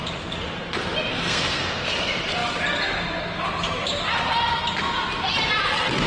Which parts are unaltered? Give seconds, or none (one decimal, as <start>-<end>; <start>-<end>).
0.0-1.1; 1.9-6.1